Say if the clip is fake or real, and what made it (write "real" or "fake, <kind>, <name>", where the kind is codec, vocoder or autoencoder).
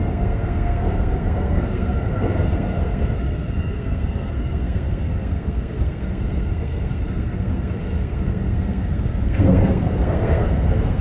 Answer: fake, codec, SNAC